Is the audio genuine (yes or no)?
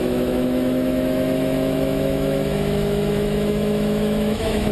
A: no